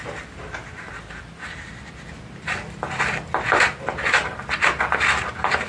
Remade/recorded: recorded